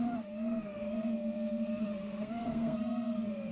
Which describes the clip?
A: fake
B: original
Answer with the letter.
A